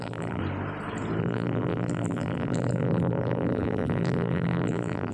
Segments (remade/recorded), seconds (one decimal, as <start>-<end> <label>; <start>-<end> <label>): 0.0-0.4 remade; 0.4-1.2 recorded; 1.2-5.1 remade